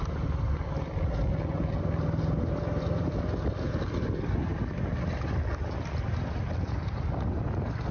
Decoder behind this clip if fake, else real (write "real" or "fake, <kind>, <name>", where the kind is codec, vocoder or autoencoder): real